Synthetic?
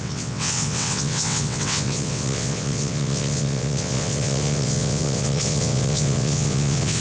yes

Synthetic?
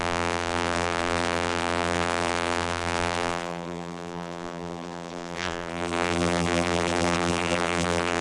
yes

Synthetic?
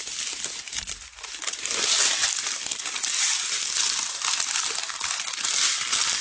no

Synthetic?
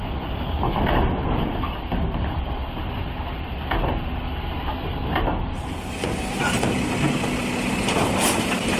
no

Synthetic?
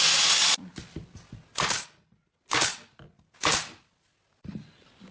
no